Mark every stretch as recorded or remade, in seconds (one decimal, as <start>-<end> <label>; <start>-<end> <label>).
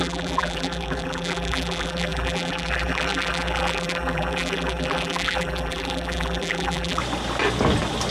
0.0-7.0 remade; 7.0-8.1 recorded